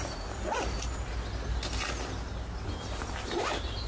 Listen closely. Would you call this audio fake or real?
real